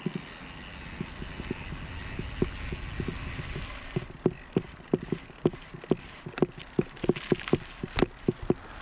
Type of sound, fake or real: real